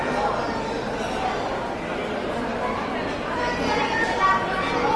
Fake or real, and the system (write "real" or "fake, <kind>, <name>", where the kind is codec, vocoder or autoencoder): real